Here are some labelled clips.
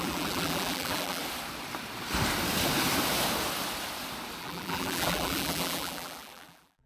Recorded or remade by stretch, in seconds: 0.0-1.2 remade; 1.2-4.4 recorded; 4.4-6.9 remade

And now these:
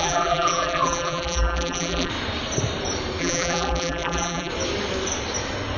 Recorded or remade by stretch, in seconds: 0.0-2.1 remade; 2.1-3.2 recorded; 3.2-4.5 remade; 4.5-5.8 recorded

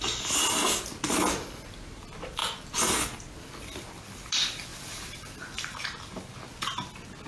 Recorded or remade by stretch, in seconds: 0.0-4.7 recorded; 4.7-5.8 remade; 5.8-7.3 recorded

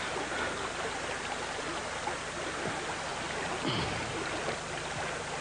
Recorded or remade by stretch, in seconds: 0.0-5.4 recorded

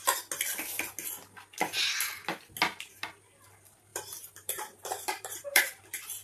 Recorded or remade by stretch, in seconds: 0.0-3.9 recorded; 3.9-5.8 remade; 5.8-6.2 recorded

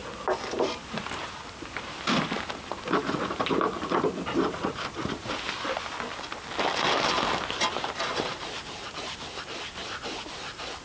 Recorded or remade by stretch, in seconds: 0.0-0.5 recorded; 0.5-2.7 remade; 2.7-7.7 recorded; 7.7-9.8 remade; 9.8-10.8 recorded